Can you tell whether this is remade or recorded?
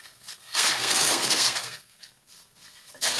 remade